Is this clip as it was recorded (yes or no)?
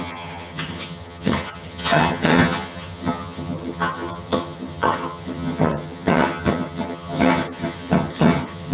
no